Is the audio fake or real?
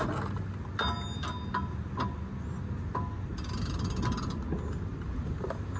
real